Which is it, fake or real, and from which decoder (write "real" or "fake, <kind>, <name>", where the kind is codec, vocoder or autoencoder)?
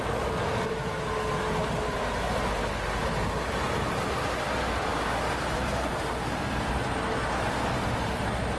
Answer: real